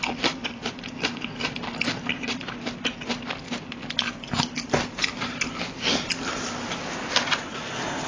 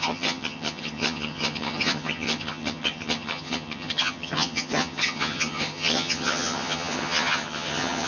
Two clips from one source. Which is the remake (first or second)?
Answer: second